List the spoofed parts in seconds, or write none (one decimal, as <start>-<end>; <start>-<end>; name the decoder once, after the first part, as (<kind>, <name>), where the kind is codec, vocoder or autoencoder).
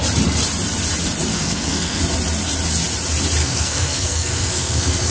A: 1.3-2.0 (codec, SNAC); 3.4-5.1